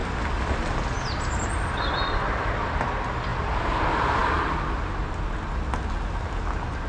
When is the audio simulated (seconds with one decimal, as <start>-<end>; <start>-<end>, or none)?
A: 0.0-2.8